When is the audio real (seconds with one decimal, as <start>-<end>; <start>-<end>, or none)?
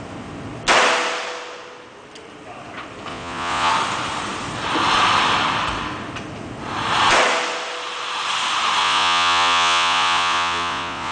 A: 0.0-3.1; 3.7-8.8